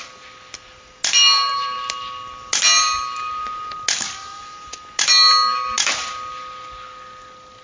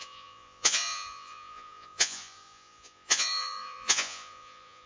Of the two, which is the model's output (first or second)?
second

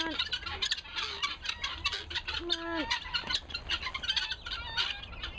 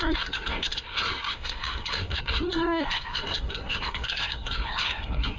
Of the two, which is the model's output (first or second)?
second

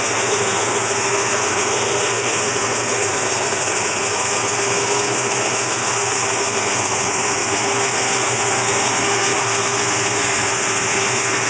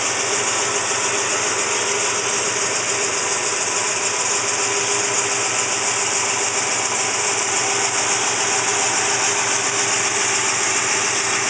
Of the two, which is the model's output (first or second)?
first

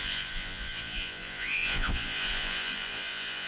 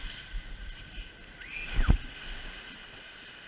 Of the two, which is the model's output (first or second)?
first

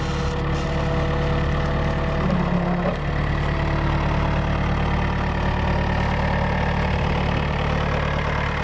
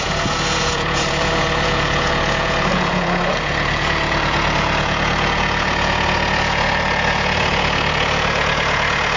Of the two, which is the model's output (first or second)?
second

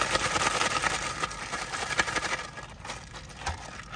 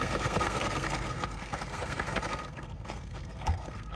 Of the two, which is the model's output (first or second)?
second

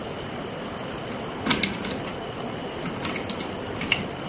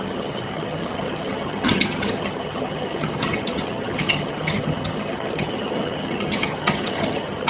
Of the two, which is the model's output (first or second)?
second